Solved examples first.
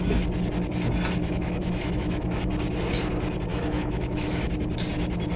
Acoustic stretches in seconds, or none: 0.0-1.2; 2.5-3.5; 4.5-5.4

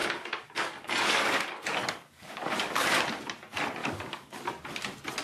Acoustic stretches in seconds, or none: 3.1-3.8; 4.4-5.2

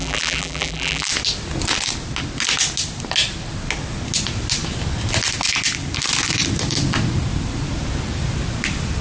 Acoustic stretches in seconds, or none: 1.1-9.0